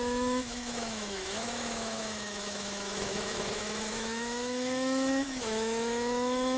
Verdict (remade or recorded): remade